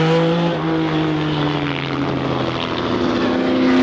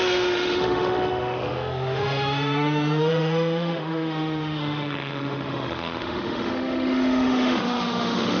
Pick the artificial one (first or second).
second